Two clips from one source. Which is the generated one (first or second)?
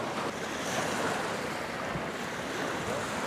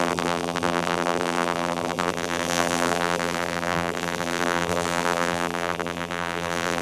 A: second